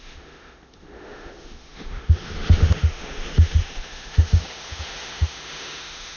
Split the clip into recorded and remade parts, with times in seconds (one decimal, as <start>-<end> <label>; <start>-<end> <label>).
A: 0.0-6.2 remade